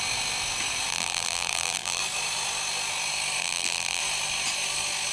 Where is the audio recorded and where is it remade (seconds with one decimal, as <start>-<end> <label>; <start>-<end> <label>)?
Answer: 0.0-0.9 recorded; 0.9-2.0 remade; 2.0-3.4 recorded; 3.4-4.0 remade; 4.0-5.1 recorded